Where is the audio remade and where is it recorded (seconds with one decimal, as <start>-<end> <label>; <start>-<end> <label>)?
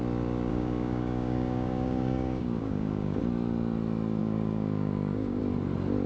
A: 0.0-0.5 recorded; 0.5-3.2 remade; 3.2-4.2 recorded; 4.2-5.4 remade; 5.4-6.1 recorded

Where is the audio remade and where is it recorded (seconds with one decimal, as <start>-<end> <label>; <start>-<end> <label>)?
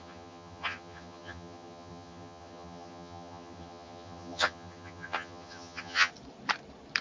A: 0.0-6.1 remade; 6.1-7.0 recorded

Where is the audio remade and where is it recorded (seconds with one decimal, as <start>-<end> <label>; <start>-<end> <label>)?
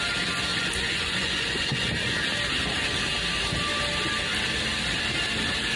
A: 0.0-0.5 recorded; 0.5-1.9 remade; 1.9-5.8 recorded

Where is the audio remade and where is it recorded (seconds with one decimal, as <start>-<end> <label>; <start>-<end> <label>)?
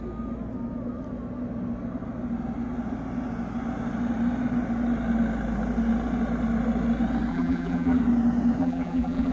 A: 0.0-7.3 recorded; 7.3-8.0 remade; 8.0-8.6 recorded; 8.6-9.3 remade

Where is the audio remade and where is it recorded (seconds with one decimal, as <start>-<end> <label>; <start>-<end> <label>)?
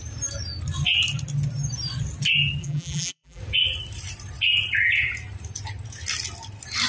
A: 0.0-2.6 recorded; 2.6-3.4 remade; 3.4-6.9 recorded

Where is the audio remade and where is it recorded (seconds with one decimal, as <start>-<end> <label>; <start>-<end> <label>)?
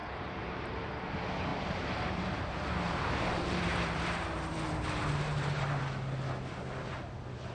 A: 0.0-0.9 remade; 0.9-1.5 recorded; 1.5-5.8 remade; 5.8-7.5 recorded